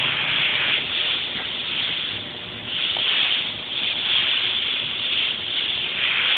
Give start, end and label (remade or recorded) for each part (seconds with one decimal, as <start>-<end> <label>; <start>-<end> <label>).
0.0-4.2 recorded; 4.2-5.3 remade; 5.3-6.4 recorded